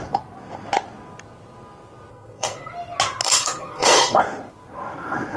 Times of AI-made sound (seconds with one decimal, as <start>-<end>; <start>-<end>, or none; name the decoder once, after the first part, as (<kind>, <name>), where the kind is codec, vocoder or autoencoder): 2.1-2.7 (codec, SNAC); 3.2-4.2